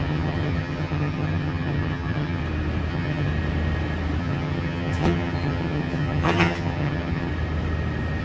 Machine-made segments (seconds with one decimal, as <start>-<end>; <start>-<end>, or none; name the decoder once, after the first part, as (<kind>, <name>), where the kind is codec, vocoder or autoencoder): 0.0-2.4 (vocoder, HiFi-GAN); 2.9-3.3; 4.2-7.3